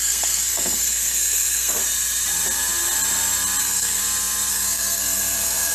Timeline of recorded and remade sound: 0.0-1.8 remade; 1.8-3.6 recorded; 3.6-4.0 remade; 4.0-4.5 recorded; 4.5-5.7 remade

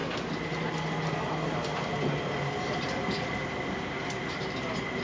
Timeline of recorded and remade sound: 0.0-5.0 recorded